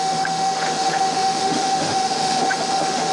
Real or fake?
fake